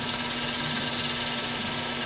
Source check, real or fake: real